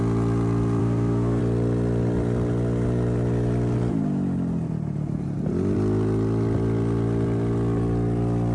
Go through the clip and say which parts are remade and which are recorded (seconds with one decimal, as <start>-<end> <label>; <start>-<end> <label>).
0.0-0.8 recorded; 0.8-1.4 remade; 1.4-8.5 recorded